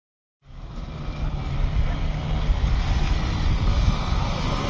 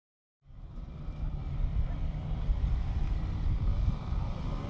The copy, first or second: second